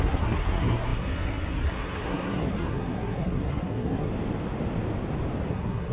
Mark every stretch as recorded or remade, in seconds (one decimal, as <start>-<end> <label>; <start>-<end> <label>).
0.0-4.1 remade; 4.1-5.5 recorded; 5.5-5.9 remade